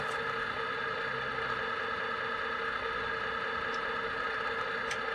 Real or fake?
real